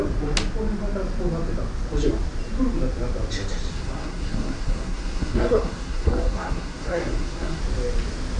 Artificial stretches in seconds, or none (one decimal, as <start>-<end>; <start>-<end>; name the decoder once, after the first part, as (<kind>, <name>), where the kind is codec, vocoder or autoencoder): 3.7-7.6 (codec, SNAC)